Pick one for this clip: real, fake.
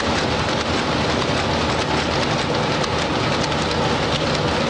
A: real